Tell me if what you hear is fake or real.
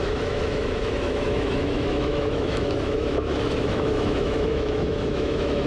fake